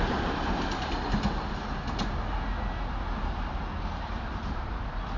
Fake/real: real